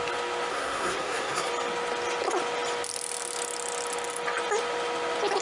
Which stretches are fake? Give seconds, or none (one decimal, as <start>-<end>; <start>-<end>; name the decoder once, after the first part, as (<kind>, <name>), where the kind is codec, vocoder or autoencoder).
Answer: 0.5-1.5 (codec, SNAC)